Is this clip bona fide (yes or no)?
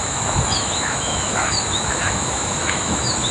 no